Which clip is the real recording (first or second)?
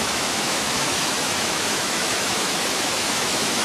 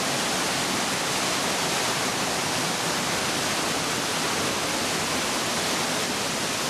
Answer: second